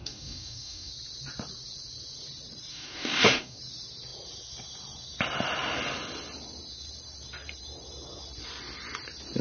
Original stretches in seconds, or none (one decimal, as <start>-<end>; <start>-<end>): 0.9-2.7; 3.6-9.4